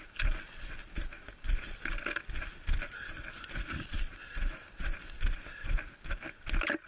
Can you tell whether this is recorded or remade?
recorded